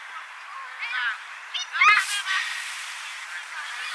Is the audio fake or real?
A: real